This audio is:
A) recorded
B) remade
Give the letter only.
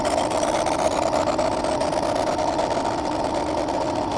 A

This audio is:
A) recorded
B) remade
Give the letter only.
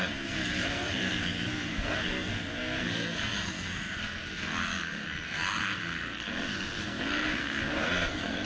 B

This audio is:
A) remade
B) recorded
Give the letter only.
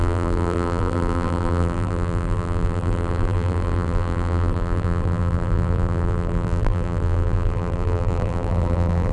A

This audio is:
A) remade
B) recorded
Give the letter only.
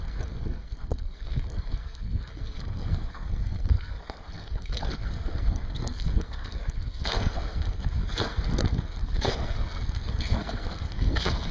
A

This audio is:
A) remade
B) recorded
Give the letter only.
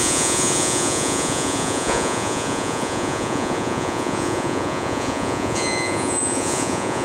A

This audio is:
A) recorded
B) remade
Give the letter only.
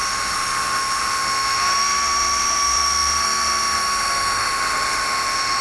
B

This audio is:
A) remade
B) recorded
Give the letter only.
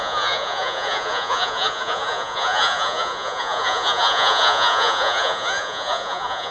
A